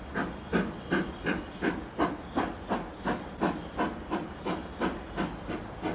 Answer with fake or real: real